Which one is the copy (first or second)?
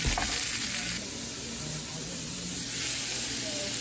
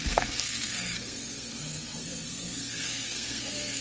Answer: second